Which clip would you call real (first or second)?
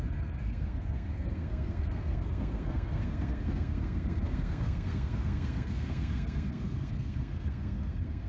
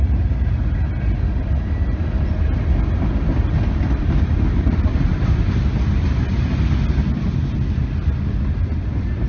second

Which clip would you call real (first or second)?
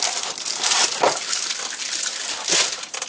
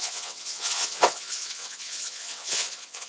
first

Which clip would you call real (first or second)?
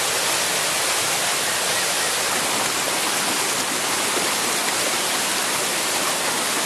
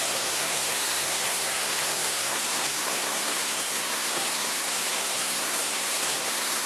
first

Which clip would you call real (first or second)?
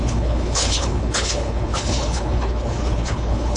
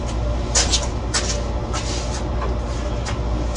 second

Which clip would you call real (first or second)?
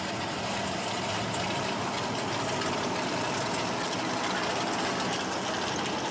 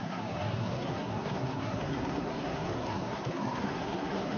first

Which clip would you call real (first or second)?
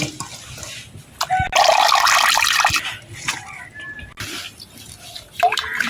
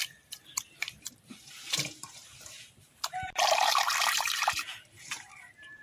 first